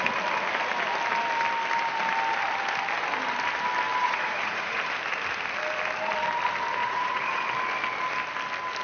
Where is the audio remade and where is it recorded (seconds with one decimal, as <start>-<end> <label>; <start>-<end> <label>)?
0.0-4.0 recorded; 4.0-4.8 remade; 4.8-6.8 recorded; 6.8-7.4 remade; 7.4-8.8 recorded